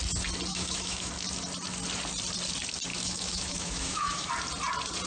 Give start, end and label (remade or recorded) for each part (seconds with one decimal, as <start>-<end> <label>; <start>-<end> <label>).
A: 0.0-0.5 recorded; 0.5-1.1 remade; 1.1-2.9 recorded; 2.9-4.3 remade; 4.3-5.1 recorded